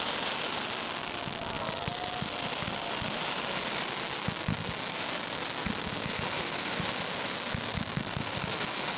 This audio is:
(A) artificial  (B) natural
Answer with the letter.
B